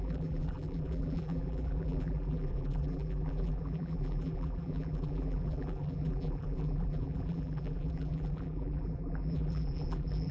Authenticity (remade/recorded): remade